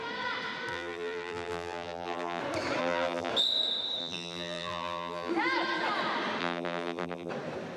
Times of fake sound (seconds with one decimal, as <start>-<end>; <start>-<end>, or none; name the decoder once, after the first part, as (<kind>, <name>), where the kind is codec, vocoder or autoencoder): 0.7-2.4 (vocoder, BigVGAN v2); 2.8-3.3; 4.0-5.3; 6.4-7.3